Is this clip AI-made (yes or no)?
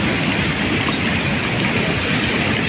no